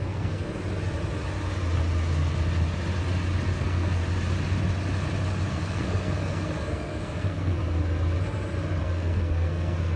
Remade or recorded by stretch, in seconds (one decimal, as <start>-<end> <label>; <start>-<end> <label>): 0.0-0.5 remade; 0.5-3.6 recorded; 3.6-4.0 remade; 4.0-5.5 recorded; 5.5-7.6 remade; 7.6-8.8 recorded; 8.8-10.0 remade